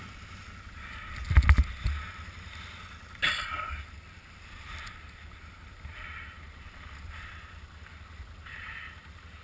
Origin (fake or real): real